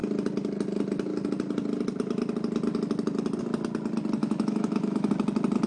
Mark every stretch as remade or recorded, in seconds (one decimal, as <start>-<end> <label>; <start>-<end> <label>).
0.0-4.2 recorded; 4.2-5.1 remade; 5.1-5.7 recorded